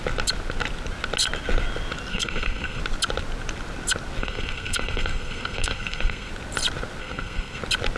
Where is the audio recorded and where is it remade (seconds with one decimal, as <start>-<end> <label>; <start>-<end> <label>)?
0.0-2.1 recorded; 2.1-2.8 remade; 2.8-4.2 recorded; 4.2-6.3 remade; 6.3-7.0 recorded; 7.0-7.6 remade; 7.6-8.0 recorded